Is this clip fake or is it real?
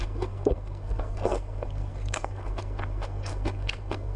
fake